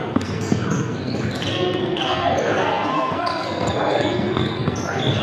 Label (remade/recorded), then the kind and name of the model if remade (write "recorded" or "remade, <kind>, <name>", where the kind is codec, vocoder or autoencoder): remade, codec, SNAC